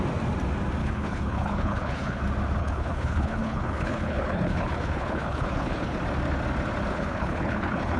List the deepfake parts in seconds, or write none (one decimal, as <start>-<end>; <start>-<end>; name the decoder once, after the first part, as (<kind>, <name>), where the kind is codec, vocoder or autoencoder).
0.8-2.2 (codec, HILCodec); 2.6-6.0; 6.9-8.0